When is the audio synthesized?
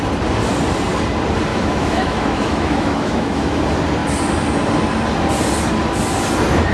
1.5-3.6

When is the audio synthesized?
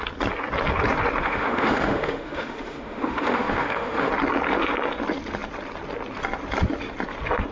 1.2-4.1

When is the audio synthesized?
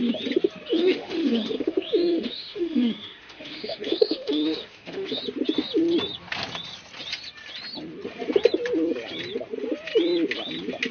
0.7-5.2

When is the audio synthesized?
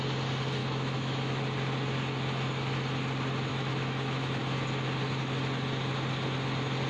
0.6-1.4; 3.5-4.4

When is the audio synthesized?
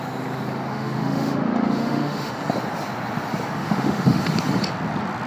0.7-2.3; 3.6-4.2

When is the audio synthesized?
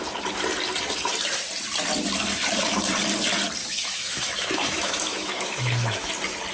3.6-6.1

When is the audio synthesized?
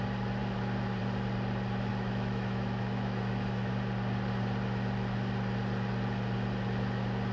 1.9-3.7